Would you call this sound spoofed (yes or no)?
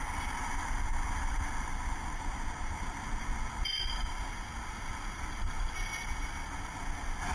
no